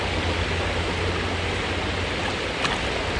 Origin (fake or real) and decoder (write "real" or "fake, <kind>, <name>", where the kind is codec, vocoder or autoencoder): real